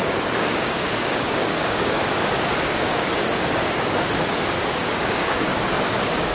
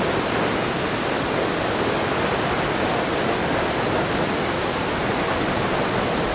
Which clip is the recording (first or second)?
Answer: second